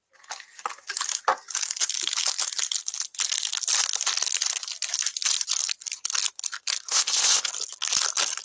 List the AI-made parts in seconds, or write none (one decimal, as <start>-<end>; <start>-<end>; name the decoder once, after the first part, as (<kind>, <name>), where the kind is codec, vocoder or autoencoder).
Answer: 6.9-7.5 (codec, ZipCodec)